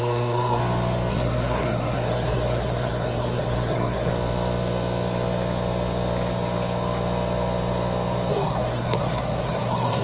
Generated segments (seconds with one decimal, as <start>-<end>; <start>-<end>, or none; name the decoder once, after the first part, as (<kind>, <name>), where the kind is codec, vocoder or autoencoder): 0.0-0.6 (codec, SNAC); 1.1-4.1; 8.3-10.0